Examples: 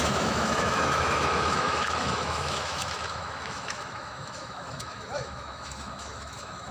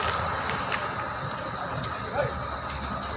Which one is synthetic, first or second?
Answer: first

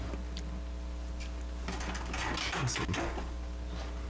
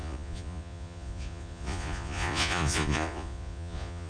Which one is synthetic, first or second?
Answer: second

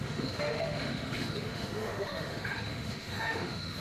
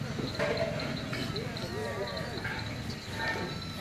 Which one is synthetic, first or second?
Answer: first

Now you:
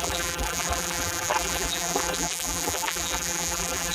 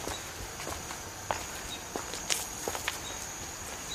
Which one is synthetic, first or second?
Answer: first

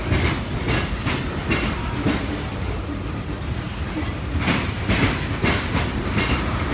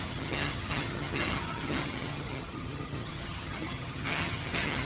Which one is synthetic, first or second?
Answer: second